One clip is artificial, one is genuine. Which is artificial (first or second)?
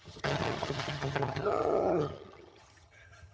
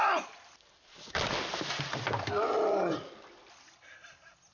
first